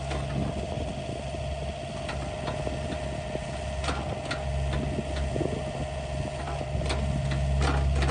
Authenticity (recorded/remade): recorded